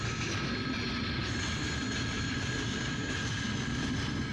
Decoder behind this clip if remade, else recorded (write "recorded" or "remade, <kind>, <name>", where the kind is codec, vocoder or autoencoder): recorded